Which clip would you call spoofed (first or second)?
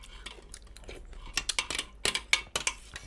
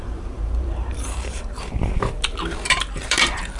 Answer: second